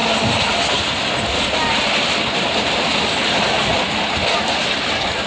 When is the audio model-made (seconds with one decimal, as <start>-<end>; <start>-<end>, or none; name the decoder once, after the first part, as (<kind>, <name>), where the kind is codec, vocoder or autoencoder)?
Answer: none